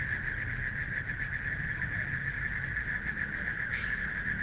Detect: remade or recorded recorded